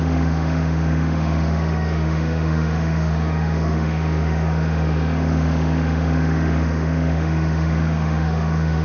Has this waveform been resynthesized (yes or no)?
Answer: yes